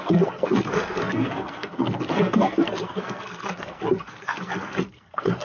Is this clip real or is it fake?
fake